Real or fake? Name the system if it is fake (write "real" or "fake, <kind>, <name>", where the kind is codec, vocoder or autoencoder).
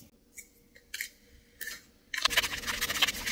real